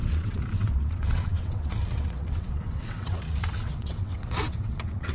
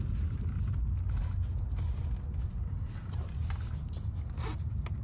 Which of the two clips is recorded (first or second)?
second